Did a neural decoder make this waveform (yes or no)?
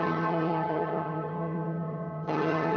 yes